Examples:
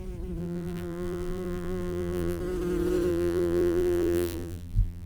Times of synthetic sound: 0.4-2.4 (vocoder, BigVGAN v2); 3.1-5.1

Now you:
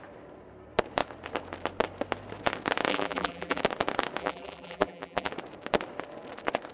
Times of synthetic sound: 2.9-3.6 (vocoder, BigVGAN v2); 4.2-5.3

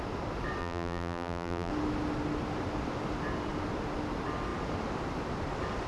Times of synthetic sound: 0.6-1.7 (vocoder, BigVGAN v2)

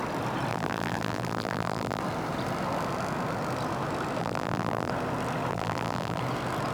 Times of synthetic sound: 0.5-2.0 (vocoder, BigVGAN v2); 4.2-4.9; 5.5-6.2

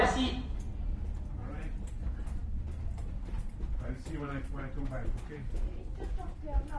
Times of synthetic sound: 1.4-5.5 (vocoder, BigVGAN v2)